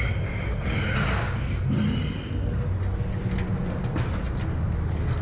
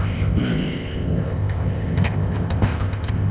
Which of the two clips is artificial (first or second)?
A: second